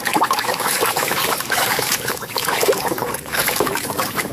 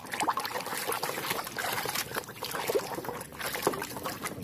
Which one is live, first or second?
second